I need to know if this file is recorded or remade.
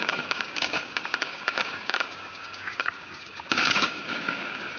remade